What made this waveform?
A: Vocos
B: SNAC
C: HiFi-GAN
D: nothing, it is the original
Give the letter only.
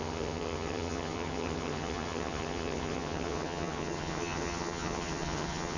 C